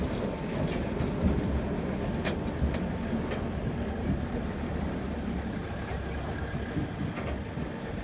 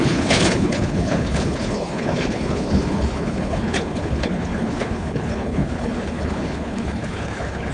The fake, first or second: second